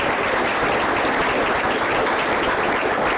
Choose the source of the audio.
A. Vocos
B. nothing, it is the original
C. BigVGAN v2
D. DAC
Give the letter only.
B